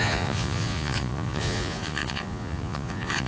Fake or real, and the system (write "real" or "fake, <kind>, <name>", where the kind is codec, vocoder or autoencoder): fake, vocoder, Vocos